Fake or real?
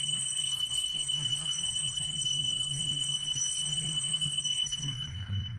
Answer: fake